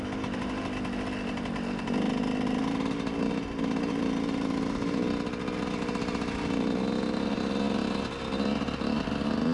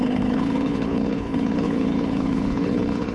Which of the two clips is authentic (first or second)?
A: first